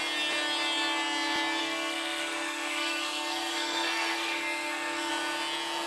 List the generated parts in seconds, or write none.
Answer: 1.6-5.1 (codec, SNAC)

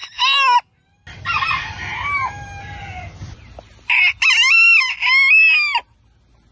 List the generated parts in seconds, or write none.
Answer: none

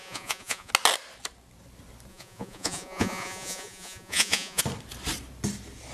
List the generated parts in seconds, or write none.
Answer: 0.0-0.7 (vocoder, Vocos); 2.1-4.6

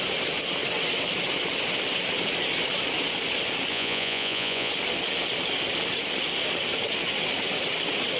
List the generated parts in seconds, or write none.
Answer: 3.7-4.7 (vocoder, Vocos)

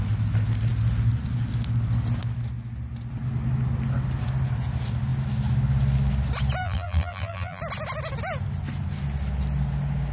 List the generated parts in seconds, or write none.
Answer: 6.6-7.6 (vocoder, BigVGAN v2)

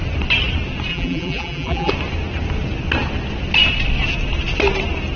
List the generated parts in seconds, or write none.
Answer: 0.9-1.9 (vocoder, BigVGAN v2)

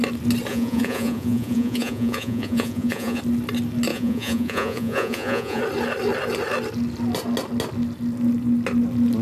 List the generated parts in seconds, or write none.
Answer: 0.5-3.2 (vocoder, Vocos); 3.9-5.6